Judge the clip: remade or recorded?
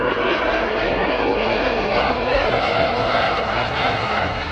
remade